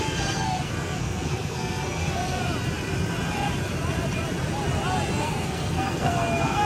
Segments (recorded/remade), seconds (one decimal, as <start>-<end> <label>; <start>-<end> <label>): 0.0-2.4 remade; 2.4-5.2 recorded; 5.2-6.6 remade